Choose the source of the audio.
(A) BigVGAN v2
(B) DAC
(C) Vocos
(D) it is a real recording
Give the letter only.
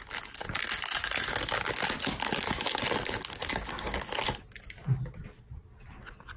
D